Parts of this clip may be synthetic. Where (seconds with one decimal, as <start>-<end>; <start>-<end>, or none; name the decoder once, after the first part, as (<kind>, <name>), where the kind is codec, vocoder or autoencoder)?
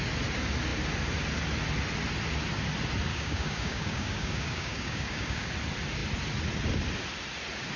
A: 3.1-5.5 (codec, DAC)